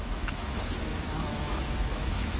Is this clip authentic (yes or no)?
no